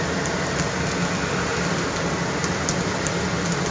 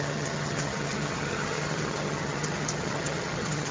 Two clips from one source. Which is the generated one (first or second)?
second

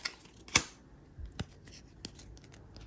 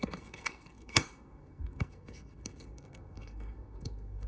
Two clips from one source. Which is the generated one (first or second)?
second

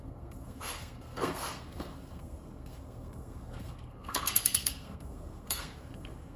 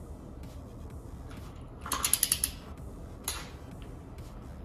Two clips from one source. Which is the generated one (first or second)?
first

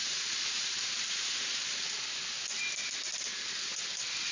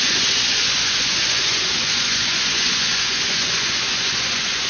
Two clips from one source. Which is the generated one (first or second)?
second